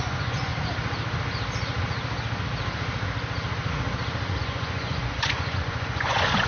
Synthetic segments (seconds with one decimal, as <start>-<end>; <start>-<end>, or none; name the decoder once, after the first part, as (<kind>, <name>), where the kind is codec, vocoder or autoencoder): 0.0-0.5 (vocoder, Vocos); 4.4-6.5